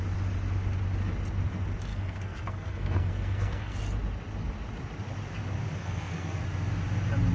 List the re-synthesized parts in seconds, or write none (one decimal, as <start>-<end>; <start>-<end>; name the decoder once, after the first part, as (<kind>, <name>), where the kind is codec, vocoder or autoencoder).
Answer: 1.9-3.8 (codec, SNAC); 5.8-6.4